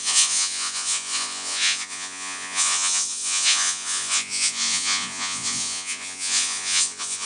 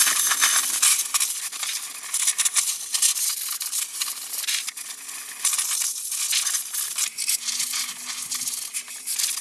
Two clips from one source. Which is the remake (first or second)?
first